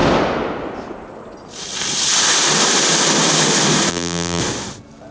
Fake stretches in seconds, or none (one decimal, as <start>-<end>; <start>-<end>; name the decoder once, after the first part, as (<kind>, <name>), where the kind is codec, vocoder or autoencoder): 3.9-4.4 (vocoder, BigVGAN v2)